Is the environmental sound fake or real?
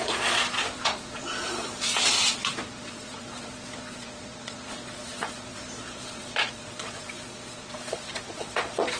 fake